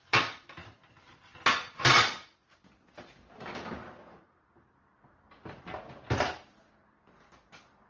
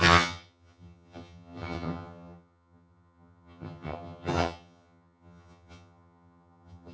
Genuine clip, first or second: first